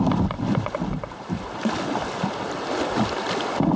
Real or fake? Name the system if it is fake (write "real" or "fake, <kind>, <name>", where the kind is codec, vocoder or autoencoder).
real